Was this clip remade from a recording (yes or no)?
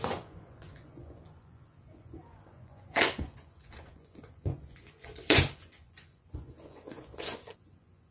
yes